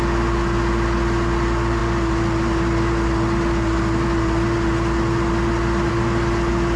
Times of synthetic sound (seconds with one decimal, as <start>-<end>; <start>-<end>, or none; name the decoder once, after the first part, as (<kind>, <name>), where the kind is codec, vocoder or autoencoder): none